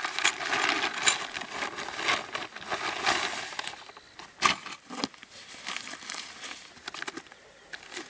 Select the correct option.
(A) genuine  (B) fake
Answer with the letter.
A